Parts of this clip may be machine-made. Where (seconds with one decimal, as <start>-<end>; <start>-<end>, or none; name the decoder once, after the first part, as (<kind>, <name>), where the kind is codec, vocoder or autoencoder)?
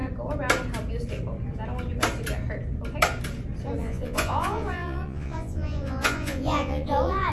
3.8-7.3 (vocoder, Vocos)